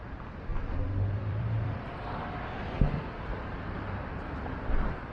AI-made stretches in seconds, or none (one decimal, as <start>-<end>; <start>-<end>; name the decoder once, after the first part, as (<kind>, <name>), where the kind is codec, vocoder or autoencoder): 0.5-3.2 (vocoder, BigVGAN v2)